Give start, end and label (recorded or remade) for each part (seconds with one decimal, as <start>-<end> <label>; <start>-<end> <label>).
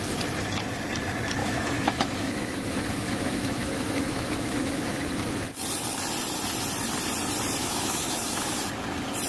0.0-1.4 recorded; 1.4-5.0 remade; 5.0-7.6 recorded; 7.6-8.6 remade; 8.6-9.3 recorded